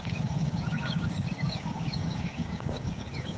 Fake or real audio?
fake